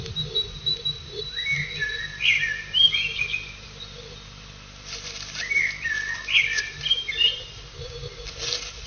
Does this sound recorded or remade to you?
recorded